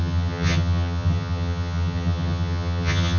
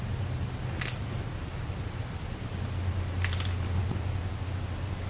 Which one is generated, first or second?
first